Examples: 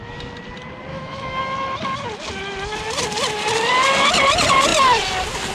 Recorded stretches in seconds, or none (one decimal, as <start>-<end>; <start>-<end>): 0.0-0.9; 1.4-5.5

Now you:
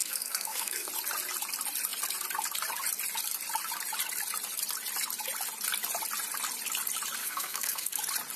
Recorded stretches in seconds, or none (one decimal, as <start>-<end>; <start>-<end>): 0.9-7.2; 8.0-8.4

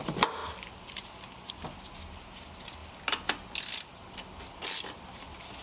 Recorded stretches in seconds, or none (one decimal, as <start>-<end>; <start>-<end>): 0.0-0.4; 1.5-4.6